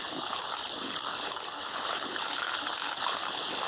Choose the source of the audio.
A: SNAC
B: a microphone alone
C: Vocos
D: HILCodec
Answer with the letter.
D